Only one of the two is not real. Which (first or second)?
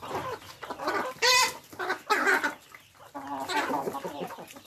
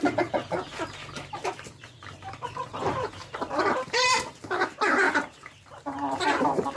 second